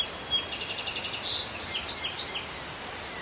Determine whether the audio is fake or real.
real